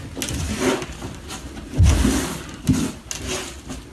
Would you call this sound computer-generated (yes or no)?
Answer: no